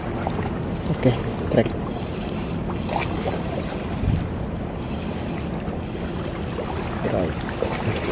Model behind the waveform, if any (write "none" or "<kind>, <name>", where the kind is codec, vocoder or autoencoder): none